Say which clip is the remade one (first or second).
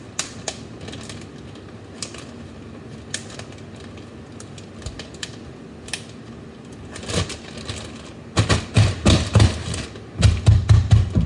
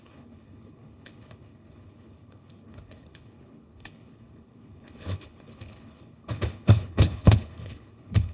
second